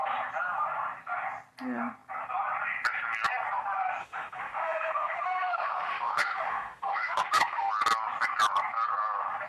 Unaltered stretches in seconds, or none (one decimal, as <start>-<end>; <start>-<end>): 0.0-4.0; 7.7-9.5